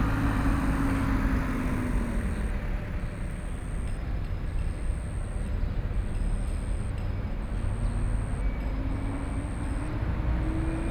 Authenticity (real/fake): real